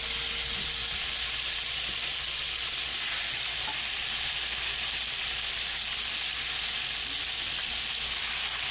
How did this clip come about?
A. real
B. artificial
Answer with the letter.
A